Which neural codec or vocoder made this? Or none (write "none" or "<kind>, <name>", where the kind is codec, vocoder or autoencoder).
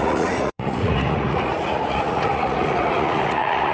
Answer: vocoder, Vocos